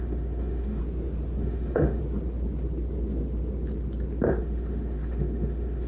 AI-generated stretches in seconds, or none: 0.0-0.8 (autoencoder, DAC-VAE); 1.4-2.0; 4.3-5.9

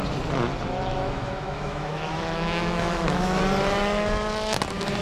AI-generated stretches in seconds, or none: 0.9-3.4 (autoencoder, DAC-VAE)

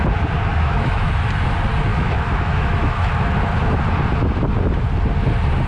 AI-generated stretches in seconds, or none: 0.5-1.1 (autoencoder, DAC-VAE); 1.9-3.1